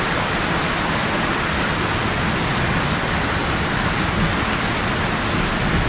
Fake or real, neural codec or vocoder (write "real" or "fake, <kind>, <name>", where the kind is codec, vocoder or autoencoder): real